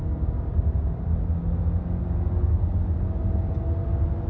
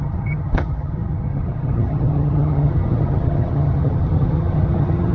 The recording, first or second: first